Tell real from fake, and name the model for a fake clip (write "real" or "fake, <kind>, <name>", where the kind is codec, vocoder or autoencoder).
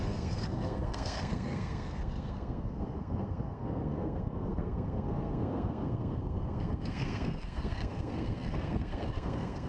fake, codec, SNAC